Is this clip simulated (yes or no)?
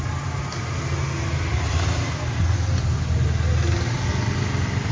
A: no